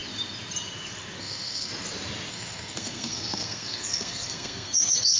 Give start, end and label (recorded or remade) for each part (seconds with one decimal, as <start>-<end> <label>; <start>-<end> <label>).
0.0-1.2 recorded; 1.2-1.7 remade; 1.7-2.3 recorded; 2.3-5.2 remade